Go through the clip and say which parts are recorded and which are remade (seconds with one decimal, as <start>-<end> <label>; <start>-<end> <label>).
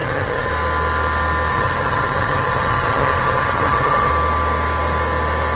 0.0-0.5 remade; 0.5-1.5 recorded; 1.5-4.1 remade; 4.1-5.6 recorded